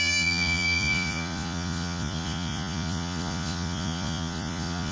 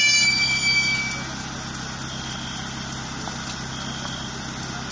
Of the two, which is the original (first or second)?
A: second